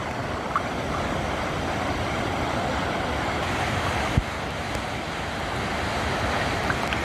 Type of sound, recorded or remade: recorded